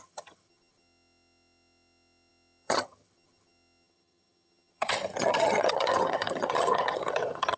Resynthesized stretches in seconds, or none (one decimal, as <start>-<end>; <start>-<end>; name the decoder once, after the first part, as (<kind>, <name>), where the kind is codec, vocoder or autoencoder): 0.0-7.6 (vocoder, HiFi-GAN)

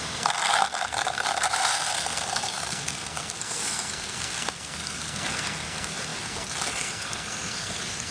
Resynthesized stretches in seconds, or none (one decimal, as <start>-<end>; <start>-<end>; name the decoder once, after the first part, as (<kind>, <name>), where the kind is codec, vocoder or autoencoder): 0.0-8.1 (codec, SNAC)

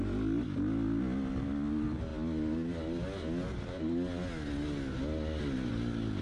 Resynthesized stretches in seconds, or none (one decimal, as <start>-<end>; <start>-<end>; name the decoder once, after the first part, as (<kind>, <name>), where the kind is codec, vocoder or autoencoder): none

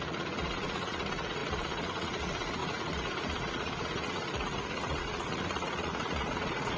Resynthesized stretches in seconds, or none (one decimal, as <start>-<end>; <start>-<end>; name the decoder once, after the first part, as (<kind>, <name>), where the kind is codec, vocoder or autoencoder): 0.0-6.8 (vocoder, Vocos)

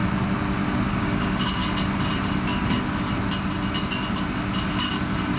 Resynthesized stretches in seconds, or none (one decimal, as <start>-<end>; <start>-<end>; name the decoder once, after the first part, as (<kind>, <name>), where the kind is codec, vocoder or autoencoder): 0.9-1.6 (codec, DAC); 4.8-5.4

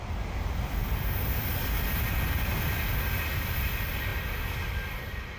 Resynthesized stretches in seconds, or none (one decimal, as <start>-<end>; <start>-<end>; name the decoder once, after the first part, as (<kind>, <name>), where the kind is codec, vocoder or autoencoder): none